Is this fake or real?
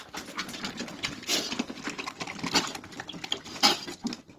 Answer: real